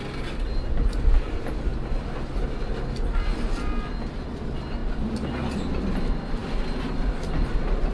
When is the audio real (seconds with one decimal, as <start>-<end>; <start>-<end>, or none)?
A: 0.0-7.9